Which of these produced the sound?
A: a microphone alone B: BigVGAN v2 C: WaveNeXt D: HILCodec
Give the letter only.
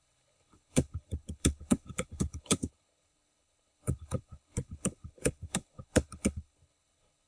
D